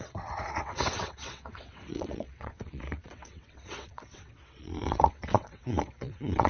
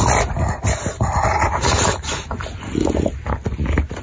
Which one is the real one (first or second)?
second